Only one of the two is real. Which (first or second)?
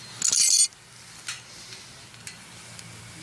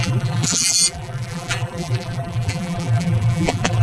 first